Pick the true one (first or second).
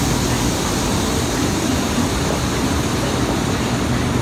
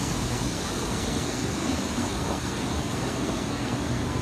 first